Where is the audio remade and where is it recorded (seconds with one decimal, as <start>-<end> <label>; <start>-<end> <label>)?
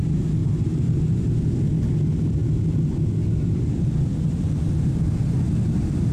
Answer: 0.0-0.4 recorded; 0.4-0.9 remade; 0.9-4.1 recorded; 4.1-5.0 remade; 5.0-6.1 recorded